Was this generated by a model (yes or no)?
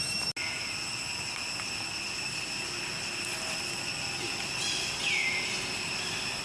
no